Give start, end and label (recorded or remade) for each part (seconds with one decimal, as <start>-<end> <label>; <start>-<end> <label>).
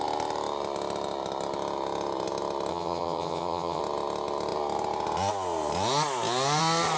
0.0-2.7 recorded; 2.7-3.8 remade; 3.8-7.0 recorded